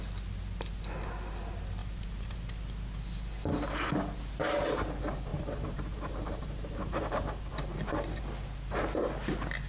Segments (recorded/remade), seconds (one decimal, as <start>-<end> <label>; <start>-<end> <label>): 0.0-1.8 recorded; 1.8-2.4 remade; 2.4-5.3 recorded; 5.3-8.2 remade; 8.2-9.7 recorded